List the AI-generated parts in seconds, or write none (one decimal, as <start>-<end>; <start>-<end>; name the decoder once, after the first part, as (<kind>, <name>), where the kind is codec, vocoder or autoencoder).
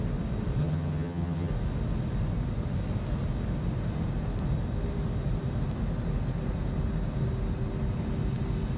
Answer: 0.6-1.5 (vocoder, HiFi-GAN)